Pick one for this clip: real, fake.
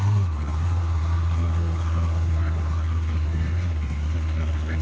fake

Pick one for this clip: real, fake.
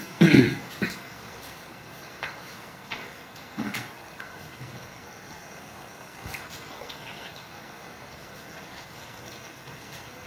fake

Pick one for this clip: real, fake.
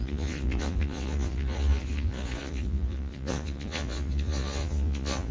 fake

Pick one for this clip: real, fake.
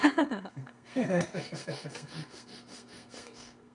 fake